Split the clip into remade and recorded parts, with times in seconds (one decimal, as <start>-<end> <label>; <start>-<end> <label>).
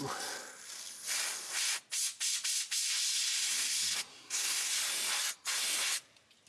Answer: 0.0-4.1 recorded; 4.1-4.7 remade; 4.7-6.5 recorded